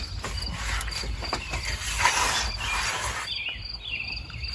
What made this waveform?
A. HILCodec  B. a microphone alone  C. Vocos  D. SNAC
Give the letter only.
B